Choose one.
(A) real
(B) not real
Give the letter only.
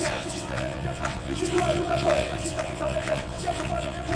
B